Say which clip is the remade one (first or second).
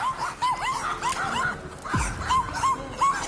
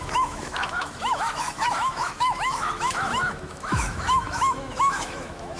second